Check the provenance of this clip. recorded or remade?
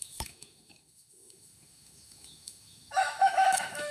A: remade